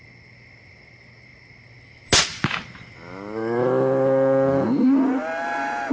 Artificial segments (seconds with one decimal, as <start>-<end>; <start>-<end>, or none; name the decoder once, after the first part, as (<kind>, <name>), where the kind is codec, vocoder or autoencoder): none